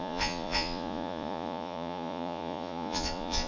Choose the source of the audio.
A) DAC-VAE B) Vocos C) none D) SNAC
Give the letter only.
B